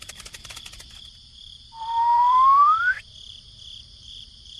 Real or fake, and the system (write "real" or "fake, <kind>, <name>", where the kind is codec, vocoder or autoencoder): fake, vocoder, BigVGAN v2